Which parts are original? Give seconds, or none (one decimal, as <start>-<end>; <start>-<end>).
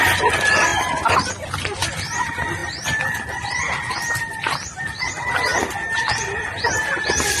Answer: 0.0-7.4